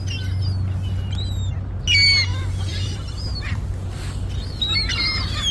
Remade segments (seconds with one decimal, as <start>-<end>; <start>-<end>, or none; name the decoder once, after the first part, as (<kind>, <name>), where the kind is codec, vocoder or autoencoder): 2.7-3.7 (vocoder, BigVGAN v2)